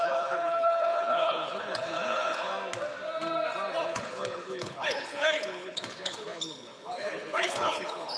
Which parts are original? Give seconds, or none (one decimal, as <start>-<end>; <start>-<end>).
2.5-3.9